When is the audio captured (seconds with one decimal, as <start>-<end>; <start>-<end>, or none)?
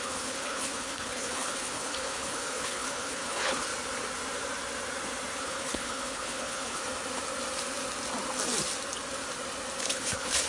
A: 3.7-5.4; 6.8-9.8